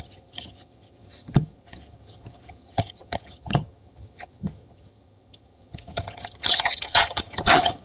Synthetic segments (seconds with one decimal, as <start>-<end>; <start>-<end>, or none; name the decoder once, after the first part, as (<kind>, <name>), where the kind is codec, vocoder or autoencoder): 0.0-7.8 (vocoder, HiFi-GAN)